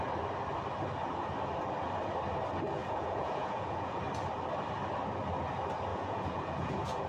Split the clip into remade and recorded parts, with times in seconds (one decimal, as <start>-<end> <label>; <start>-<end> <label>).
0.0-2.8 recorded; 2.8-4.0 remade; 4.0-5.9 recorded; 5.9-7.1 remade